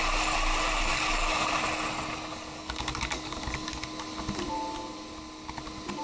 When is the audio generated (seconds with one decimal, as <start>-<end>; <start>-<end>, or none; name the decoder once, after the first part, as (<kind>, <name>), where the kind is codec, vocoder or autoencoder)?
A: 0.9-1.5 (codec, DAC); 2.3-3.7